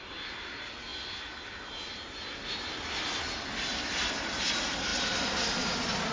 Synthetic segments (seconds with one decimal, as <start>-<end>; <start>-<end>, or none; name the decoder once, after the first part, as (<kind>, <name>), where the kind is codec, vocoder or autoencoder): 4.9-5.6 (vocoder, BigVGAN v2)